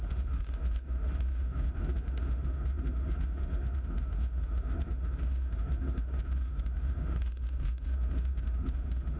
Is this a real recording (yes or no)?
no